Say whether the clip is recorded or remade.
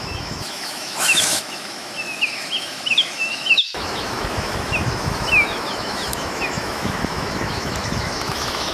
remade